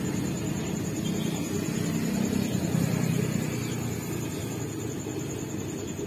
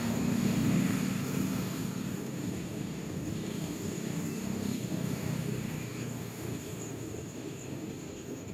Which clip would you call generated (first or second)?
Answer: second